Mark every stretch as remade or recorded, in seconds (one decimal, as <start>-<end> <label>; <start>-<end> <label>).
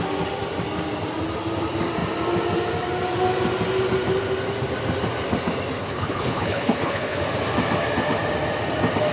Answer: 0.0-5.8 recorded; 5.8-7.2 remade; 7.2-9.1 recorded